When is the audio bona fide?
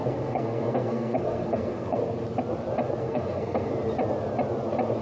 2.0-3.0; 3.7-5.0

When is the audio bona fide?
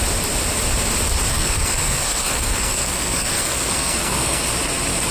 0.0-1.3; 4.4-5.1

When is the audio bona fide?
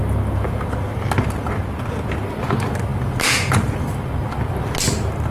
0.0-5.3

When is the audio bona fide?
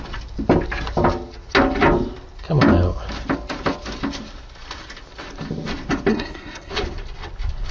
0.0-6.1; 6.7-7.7